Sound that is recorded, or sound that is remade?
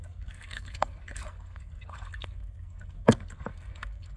remade